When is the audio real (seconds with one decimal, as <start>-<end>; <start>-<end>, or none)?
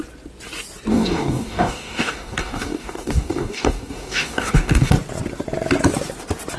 0.0-0.9; 4.9-6.6